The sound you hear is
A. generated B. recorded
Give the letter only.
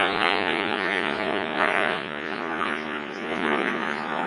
A